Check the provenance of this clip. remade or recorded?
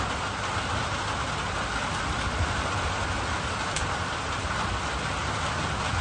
recorded